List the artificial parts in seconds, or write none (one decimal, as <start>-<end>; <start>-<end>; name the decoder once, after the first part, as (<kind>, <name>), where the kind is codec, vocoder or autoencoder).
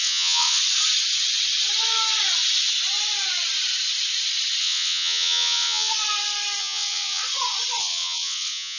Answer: 0.0-0.6 (vocoder, WaveNeXt); 4.6-5.9; 6.6-7.2; 7.8-8.8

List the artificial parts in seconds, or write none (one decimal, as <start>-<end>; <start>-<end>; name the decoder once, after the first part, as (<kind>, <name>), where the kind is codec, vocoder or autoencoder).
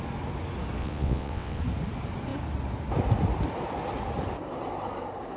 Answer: 0.8-1.6 (vocoder, WaveNeXt)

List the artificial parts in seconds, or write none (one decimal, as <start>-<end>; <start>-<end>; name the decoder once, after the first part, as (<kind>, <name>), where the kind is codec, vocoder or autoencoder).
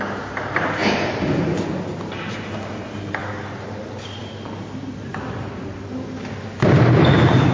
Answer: none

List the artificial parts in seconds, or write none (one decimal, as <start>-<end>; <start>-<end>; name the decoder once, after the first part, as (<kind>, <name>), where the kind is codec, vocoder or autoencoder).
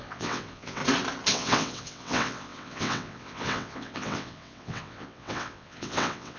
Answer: 0.0-0.8 (vocoder, WaveNeXt); 1.3-6.4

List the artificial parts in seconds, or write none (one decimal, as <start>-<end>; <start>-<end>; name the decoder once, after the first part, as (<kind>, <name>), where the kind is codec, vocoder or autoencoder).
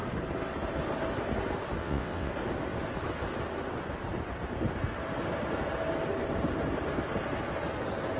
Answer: 1.8-2.3 (vocoder, WaveNeXt)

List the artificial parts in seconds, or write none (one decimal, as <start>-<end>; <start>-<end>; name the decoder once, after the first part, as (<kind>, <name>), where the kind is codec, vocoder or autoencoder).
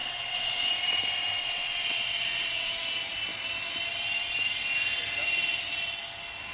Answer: 0.0-0.7 (vocoder, WaveNeXt); 1.4-2.7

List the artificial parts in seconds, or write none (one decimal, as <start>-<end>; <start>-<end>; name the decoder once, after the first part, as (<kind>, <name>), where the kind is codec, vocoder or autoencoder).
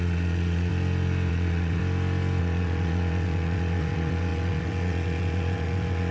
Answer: 0.0-0.7 (vocoder, WaveNeXt); 1.3-1.8; 2.4-6.1